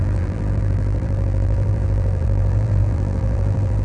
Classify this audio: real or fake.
fake